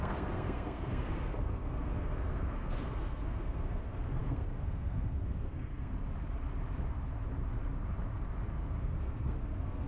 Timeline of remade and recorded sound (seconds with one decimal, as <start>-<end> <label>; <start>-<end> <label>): 0.0-5.9 remade; 5.9-8.8 recorded; 8.8-9.9 remade